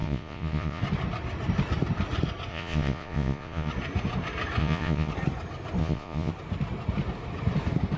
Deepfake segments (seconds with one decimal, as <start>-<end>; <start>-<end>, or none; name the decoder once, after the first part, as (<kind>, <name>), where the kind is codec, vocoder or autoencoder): 0.0-0.8 (vocoder, Vocos); 2.5-3.7; 4.6-5.1; 5.8-6.3